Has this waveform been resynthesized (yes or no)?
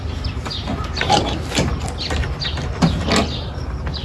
no